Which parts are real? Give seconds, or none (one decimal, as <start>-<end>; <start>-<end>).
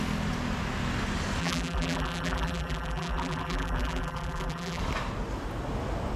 0.0-1.4; 4.8-6.2